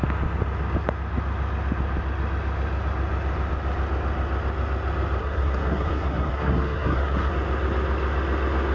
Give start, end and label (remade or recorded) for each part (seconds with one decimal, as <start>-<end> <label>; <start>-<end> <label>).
0.0-5.2 recorded; 5.2-7.3 remade; 7.3-8.7 recorded